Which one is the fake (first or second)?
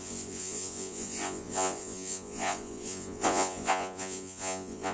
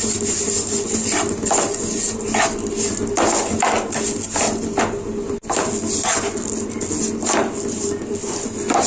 first